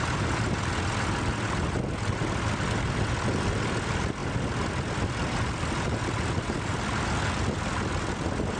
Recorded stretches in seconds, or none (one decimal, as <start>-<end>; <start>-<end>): 0.0-8.6